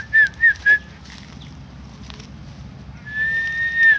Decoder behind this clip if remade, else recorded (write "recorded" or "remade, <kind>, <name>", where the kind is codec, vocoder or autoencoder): recorded